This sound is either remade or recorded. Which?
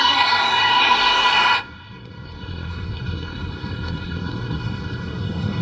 remade